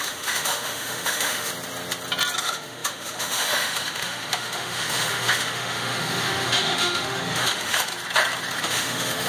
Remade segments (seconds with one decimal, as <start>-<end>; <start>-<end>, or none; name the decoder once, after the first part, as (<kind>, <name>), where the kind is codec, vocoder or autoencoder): 0.0-1.5 (autoencoder, DAC-VAE); 2.4-7.9; 8.6-9.3